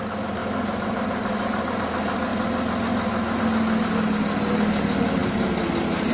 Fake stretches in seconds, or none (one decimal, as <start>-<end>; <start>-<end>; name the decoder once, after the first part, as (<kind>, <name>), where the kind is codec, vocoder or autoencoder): 0.4-1.8 (vocoder, BigVGAN v2)